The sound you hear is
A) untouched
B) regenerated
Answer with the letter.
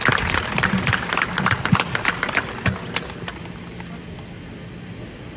A